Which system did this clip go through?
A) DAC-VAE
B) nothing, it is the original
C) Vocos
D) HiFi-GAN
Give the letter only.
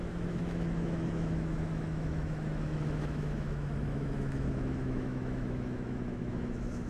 A